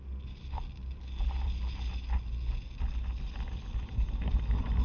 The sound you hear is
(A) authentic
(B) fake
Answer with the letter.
A